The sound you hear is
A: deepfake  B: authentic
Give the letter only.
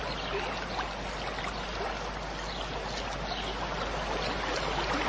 B